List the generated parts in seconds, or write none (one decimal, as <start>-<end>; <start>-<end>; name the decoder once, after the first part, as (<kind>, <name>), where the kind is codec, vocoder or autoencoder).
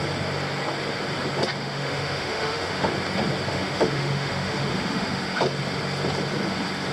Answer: 1.6-2.9 (autoencoder, DAC-VAE); 3.5-5.4